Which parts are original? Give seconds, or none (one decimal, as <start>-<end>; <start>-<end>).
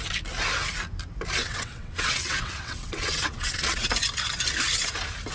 0.0-1.4; 3.9-5.3